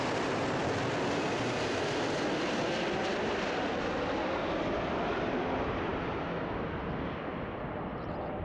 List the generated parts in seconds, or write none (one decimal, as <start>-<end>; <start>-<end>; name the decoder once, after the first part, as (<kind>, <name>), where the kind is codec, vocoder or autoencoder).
none